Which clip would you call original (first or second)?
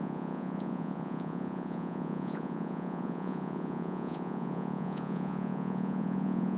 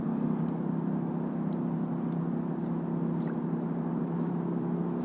second